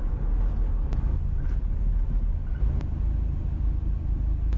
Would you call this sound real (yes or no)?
yes